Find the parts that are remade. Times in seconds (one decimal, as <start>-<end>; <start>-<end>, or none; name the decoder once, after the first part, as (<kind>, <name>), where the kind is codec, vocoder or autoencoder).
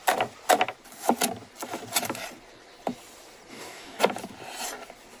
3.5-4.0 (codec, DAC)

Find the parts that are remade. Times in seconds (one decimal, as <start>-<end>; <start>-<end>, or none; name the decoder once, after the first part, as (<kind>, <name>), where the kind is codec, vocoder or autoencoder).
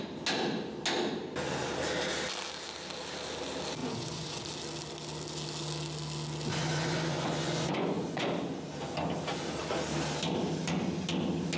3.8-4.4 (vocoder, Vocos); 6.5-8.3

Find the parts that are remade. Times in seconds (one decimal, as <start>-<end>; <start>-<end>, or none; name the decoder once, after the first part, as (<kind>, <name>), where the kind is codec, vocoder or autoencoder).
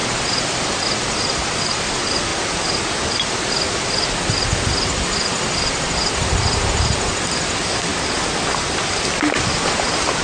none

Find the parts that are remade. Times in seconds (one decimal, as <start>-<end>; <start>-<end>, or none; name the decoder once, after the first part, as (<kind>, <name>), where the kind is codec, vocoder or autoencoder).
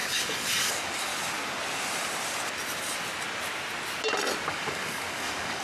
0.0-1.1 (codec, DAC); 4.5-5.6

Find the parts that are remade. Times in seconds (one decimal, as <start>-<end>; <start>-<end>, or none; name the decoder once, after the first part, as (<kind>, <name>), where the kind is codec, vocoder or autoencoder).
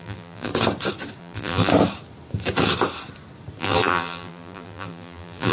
0.0-0.5 (vocoder, BigVGAN v2); 1.2-1.7; 3.6-5.5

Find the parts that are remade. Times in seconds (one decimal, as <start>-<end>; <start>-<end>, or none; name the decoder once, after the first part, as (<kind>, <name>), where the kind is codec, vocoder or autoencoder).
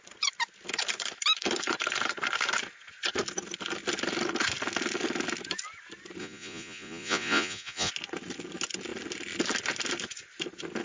6.2-7.9 (vocoder, Vocos)